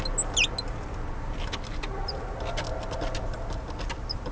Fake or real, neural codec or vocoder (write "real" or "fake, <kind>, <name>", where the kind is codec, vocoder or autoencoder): real